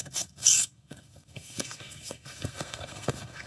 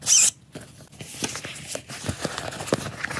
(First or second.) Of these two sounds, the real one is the second